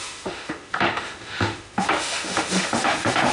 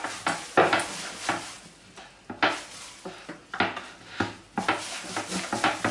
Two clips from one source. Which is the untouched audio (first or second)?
second